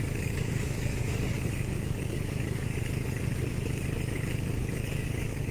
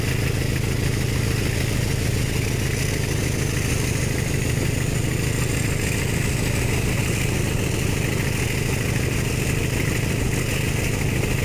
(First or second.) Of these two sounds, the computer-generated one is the first